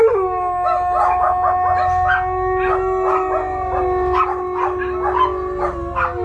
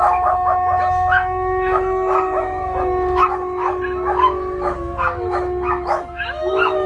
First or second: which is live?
first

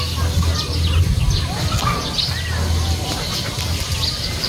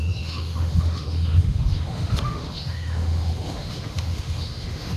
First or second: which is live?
first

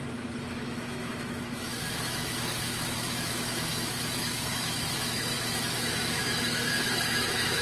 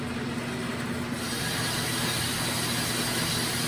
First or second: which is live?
second